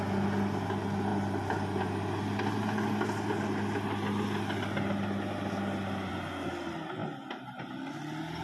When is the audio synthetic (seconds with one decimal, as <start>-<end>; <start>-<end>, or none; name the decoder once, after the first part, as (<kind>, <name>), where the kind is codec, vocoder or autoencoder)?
none